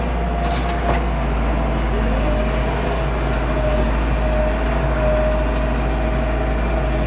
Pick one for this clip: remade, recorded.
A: recorded